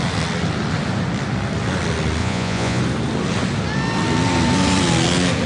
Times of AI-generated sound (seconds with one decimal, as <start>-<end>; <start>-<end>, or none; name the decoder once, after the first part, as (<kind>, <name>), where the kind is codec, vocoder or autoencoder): 2.2-2.8 (vocoder, Vocos)